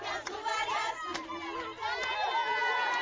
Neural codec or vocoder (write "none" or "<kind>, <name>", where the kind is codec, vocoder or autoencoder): none